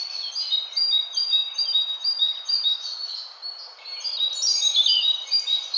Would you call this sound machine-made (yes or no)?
no